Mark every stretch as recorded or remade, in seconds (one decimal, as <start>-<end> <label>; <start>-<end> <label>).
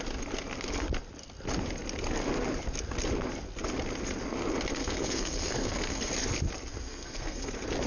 0.0-4.7 recorded; 4.7-6.1 remade; 6.1-6.7 recorded; 6.7-7.5 remade; 7.5-7.9 recorded